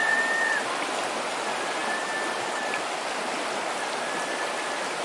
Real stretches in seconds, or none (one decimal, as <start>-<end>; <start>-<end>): 0.0-1.8